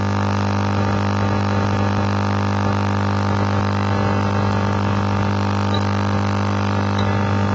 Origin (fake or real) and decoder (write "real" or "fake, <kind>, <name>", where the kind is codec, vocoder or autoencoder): fake, autoencoder, DAC-VAE